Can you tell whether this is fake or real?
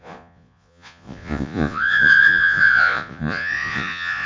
fake